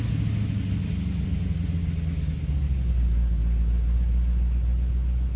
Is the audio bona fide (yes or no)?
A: yes